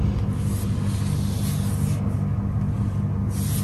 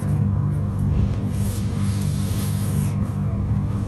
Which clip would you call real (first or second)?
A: first